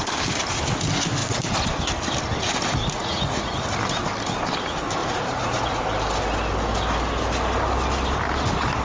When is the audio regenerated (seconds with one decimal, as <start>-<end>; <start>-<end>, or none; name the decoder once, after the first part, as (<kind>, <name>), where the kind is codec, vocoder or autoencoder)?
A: 2.8-3.7 (vocoder, Vocos); 5.0-5.8